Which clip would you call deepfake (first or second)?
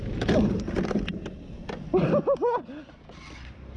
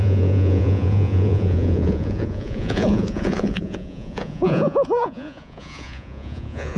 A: second